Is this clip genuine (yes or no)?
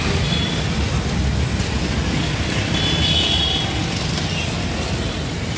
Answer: yes